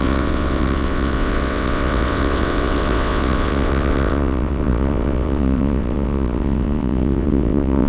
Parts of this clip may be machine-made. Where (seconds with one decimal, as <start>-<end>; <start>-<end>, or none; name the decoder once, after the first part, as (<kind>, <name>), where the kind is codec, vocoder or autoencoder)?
0.0-7.9 (vocoder, WaveNeXt)